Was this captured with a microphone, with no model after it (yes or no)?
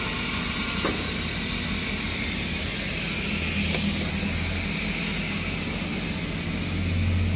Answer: yes